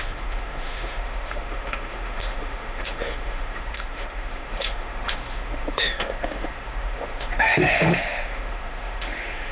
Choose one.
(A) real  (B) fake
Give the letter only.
B